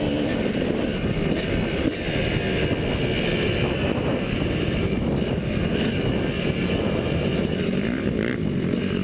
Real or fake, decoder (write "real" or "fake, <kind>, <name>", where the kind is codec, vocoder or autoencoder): real